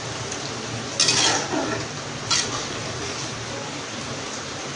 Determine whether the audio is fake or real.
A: real